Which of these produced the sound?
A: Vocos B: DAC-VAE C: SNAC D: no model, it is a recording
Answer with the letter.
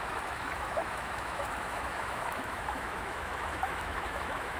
B